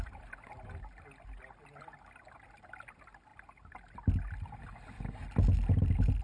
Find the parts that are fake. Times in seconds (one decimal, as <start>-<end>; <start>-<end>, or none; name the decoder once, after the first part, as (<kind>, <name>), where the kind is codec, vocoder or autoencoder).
none